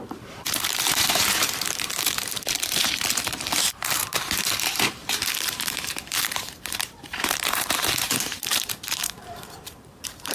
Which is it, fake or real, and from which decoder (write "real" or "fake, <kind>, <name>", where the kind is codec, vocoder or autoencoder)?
fake, vocoder, BigVGAN v2